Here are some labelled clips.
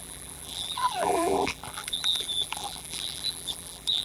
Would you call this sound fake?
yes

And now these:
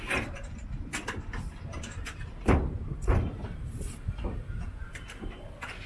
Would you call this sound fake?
yes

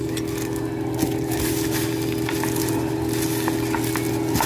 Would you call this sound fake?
no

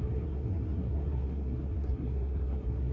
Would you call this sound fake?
yes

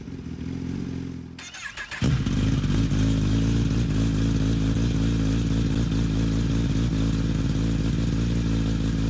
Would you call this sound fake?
no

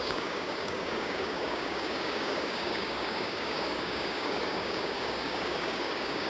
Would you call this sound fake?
yes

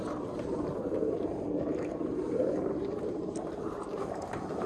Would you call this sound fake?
yes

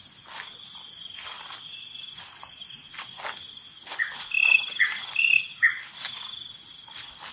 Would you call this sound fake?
no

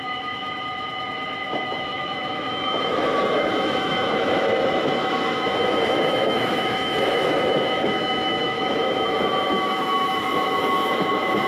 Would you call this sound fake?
yes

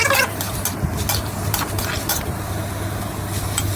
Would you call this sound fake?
no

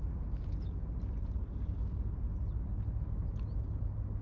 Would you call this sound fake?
no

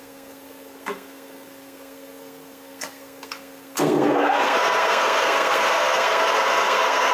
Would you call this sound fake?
yes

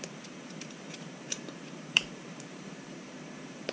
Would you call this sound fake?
yes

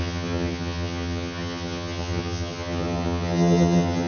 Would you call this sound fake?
yes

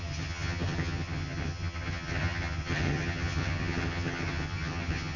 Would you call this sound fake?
yes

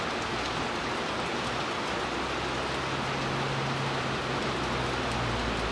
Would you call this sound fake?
no